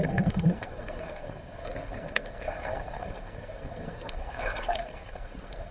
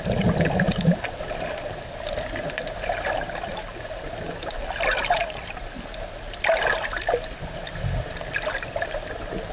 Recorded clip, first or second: second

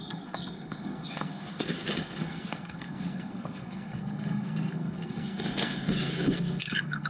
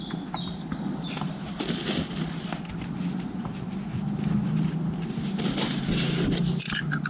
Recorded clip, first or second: second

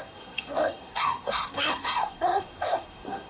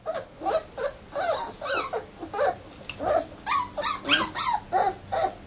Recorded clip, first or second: second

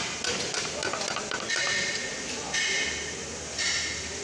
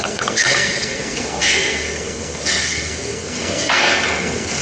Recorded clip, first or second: first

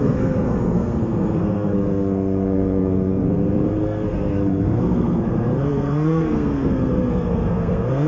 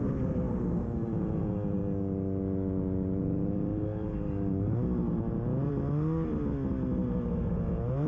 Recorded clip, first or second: second